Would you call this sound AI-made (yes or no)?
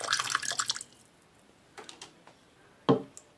no